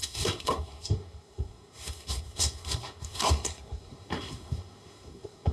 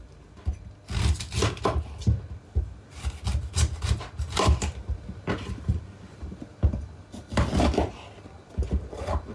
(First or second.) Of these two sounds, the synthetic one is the first